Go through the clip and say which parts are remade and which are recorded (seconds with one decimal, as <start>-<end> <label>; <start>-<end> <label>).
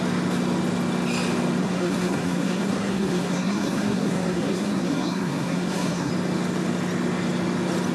0.0-1.6 recorded; 1.6-6.1 remade; 6.1-7.9 recorded